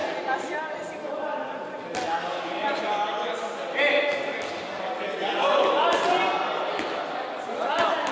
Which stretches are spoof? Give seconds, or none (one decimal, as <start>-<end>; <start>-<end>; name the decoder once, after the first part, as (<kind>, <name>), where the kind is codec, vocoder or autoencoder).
none